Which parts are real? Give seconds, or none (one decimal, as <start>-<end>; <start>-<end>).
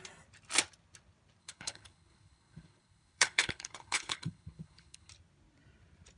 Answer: 0.0-1.4; 5.1-6.2